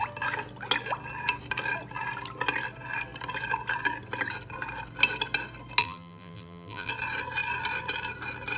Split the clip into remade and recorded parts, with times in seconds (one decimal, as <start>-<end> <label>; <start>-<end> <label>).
0.0-5.8 recorded; 5.8-6.9 remade; 6.9-8.6 recorded